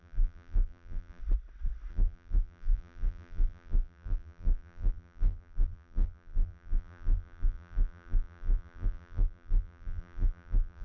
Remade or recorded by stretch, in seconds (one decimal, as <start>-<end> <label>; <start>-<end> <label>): 0.0-1.2 remade; 1.2-1.9 recorded; 1.9-10.8 remade